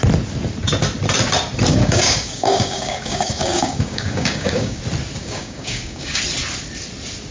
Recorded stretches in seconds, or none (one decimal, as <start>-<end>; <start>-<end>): 0.0-1.7; 4.8-5.2; 6.2-7.3